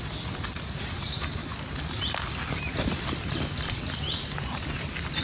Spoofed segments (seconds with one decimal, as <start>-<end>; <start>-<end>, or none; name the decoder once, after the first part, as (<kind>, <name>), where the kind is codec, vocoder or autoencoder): none